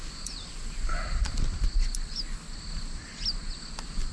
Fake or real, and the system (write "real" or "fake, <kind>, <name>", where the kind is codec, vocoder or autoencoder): real